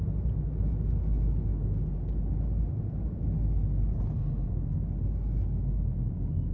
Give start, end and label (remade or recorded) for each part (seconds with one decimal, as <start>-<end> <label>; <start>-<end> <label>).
0.0-6.5 recorded